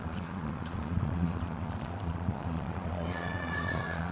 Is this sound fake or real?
fake